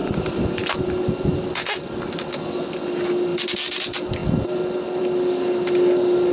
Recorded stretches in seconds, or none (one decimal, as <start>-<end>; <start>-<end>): 0.0-6.3